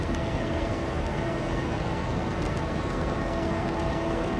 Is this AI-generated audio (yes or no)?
yes